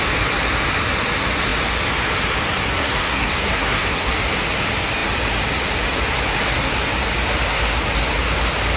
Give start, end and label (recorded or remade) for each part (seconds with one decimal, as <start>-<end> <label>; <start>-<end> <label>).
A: 0.0-2.7 recorded; 2.7-4.1 remade; 4.1-8.8 recorded